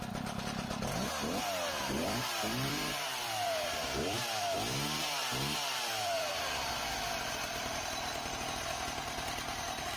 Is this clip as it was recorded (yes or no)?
no